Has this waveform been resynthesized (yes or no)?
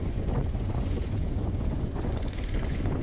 yes